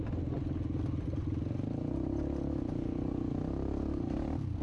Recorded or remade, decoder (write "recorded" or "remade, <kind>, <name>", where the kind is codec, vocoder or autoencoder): recorded